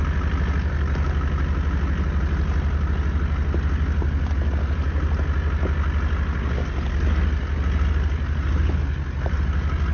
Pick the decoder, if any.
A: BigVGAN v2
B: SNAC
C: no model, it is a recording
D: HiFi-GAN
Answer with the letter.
C